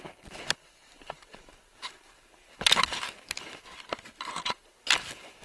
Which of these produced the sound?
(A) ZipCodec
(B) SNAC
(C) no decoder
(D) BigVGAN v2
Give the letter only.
C